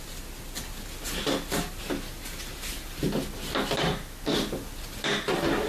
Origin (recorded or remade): recorded